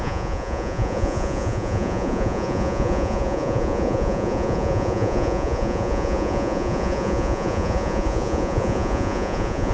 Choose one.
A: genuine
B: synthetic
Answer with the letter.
B